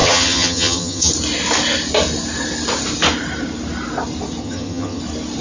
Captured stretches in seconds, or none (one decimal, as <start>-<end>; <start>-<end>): 1.1-4.4; 5.0-5.4